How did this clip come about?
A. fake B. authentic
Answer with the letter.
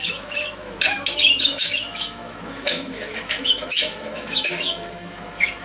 A